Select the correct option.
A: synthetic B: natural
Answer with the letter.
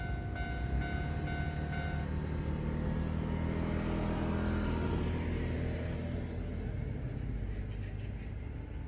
B